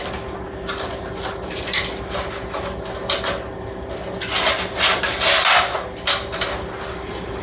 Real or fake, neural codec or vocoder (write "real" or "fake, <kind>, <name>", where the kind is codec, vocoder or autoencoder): real